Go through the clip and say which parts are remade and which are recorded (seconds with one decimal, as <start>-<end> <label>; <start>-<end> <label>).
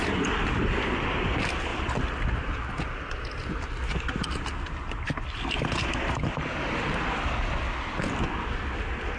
0.0-9.2 recorded